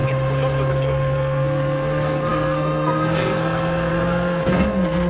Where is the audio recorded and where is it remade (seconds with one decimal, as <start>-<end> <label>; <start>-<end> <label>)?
0.0-0.7 recorded; 0.7-5.1 remade